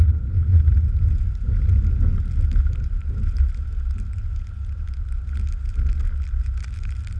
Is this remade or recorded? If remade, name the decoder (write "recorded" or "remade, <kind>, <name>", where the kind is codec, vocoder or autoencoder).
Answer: recorded